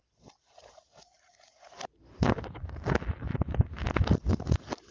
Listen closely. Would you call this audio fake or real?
fake